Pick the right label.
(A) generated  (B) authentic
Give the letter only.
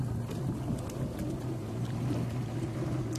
B